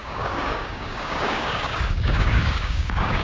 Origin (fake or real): fake